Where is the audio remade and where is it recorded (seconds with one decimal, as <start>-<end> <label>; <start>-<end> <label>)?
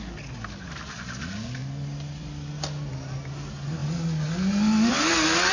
0.0-5.5 recorded